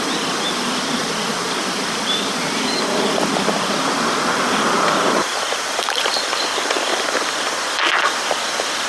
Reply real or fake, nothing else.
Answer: fake